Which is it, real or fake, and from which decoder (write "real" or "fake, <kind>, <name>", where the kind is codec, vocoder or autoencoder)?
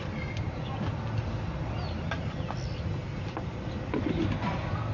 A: real